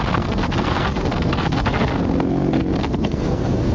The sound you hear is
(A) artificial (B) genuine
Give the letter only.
A